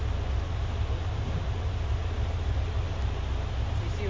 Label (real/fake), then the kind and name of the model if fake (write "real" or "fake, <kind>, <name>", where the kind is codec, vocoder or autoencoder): real